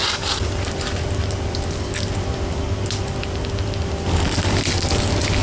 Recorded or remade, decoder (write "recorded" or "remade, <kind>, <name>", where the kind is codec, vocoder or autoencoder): recorded